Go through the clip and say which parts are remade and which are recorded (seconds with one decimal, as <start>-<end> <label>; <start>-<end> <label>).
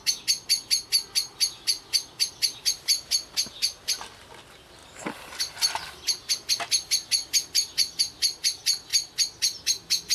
0.0-10.1 recorded